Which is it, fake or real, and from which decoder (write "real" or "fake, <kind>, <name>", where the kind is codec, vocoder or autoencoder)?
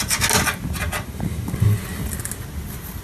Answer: real